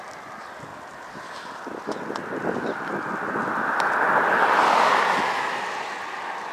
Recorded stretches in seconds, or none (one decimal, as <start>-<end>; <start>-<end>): 0.0-6.5